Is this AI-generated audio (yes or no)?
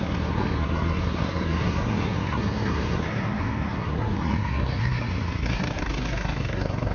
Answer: yes